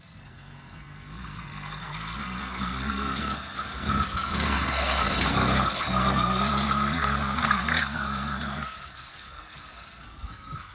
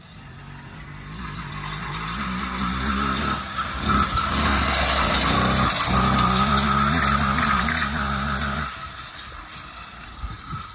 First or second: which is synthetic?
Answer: first